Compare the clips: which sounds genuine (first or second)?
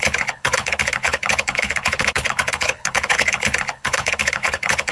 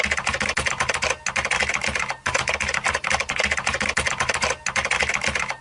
second